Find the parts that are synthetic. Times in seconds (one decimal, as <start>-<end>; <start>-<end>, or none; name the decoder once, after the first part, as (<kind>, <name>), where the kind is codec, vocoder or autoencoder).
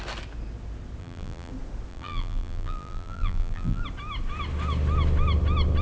1.0-1.5 (vocoder, BigVGAN v2); 1.9-3.8